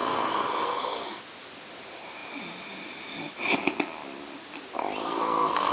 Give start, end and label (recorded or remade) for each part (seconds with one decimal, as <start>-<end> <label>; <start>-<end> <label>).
0.0-1.2 remade; 1.2-5.0 recorded; 5.0-5.7 remade